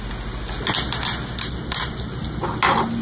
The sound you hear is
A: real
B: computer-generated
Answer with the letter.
A